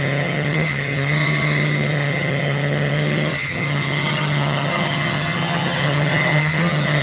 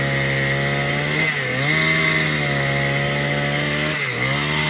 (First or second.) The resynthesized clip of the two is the first